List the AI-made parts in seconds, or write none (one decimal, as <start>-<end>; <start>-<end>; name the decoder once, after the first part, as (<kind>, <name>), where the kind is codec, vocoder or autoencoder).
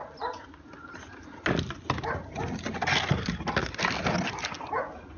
none